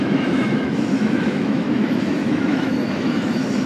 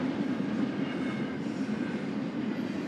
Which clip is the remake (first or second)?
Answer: first